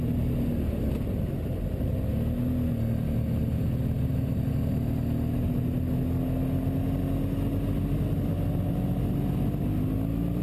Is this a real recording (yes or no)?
yes